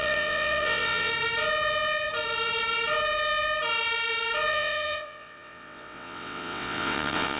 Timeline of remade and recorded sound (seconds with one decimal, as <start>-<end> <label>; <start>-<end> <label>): 0.0-1.1 remade; 1.1-4.5 recorded; 4.5-7.4 remade

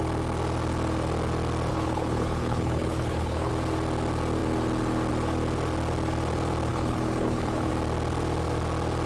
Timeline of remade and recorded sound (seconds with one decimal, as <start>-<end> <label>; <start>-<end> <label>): 0.0-1.7 recorded; 1.7-3.5 remade; 3.5-6.7 recorded; 6.7-7.7 remade; 7.7-9.1 recorded

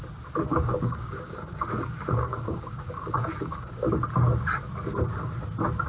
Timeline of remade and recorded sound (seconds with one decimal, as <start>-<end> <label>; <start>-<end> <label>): 0.0-0.5 recorded; 0.5-4.0 remade; 4.0-5.9 recorded